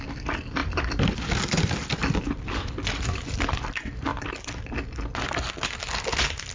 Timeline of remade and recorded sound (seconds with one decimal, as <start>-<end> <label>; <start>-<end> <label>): 0.0-6.5 recorded